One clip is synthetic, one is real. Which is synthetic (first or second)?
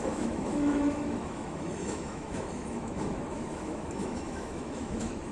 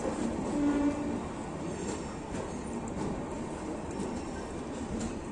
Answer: first